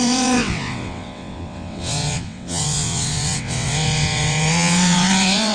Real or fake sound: fake